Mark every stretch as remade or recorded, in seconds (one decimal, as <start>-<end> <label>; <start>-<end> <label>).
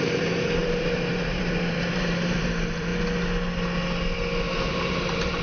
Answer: 0.0-2.9 remade; 2.9-4.7 recorded; 4.7-5.4 remade